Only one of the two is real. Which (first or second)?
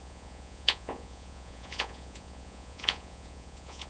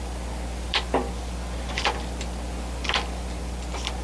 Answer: second